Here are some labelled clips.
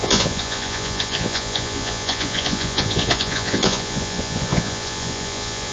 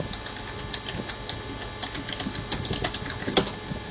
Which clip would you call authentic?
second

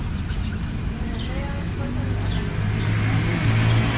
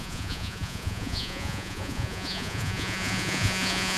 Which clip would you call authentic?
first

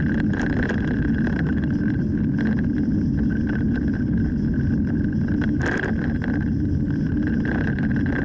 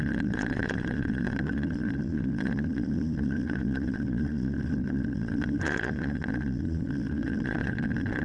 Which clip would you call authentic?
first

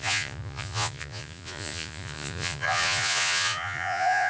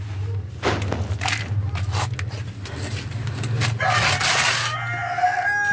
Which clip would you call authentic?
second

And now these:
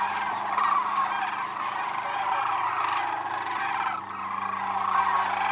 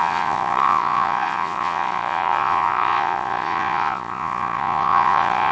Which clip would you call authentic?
first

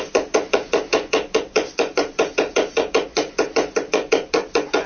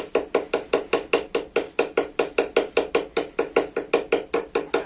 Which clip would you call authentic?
second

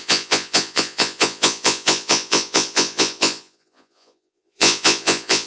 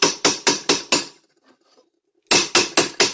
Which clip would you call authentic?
second